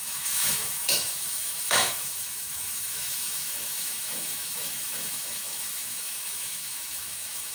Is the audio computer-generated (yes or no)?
yes